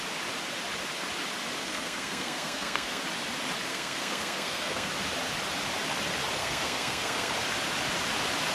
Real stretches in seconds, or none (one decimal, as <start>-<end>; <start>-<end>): 0.0-1.6; 3.0-3.7; 4.9-6.4; 7.3-8.5